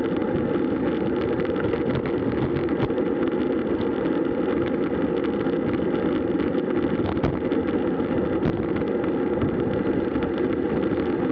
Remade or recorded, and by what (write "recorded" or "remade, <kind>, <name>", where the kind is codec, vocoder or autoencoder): recorded